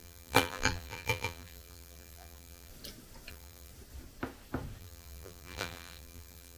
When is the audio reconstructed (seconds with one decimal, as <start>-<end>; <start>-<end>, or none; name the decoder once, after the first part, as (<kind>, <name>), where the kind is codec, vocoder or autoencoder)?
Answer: 0.0-2.7 (vocoder, BigVGAN v2); 3.3-3.7; 4.8-6.6